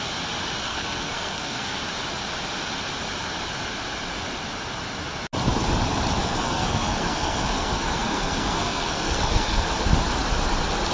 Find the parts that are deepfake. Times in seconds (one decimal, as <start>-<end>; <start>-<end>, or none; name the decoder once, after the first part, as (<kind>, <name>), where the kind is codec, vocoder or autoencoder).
0.6-1.8 (codec, SNAC); 6.2-9.7

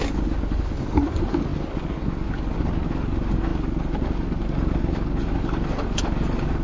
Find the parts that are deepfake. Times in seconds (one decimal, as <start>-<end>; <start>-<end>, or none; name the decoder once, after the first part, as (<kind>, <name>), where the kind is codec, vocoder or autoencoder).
0.0-6.6 (codec, DAC)

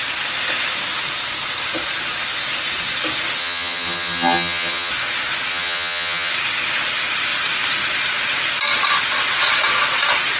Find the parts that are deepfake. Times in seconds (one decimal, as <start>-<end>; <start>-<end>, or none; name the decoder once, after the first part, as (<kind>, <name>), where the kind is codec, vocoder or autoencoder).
3.4-4.9 (vocoder, HiFi-GAN); 5.5-6.3